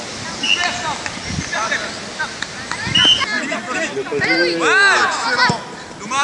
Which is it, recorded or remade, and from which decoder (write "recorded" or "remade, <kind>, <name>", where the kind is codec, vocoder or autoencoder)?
recorded